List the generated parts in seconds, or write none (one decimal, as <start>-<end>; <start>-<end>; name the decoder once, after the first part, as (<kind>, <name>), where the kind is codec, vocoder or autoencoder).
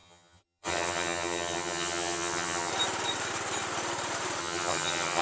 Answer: 0.0-2.7 (vocoder, HiFi-GAN); 4.4-5.2